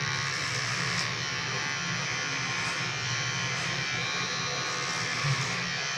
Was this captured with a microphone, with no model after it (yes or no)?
no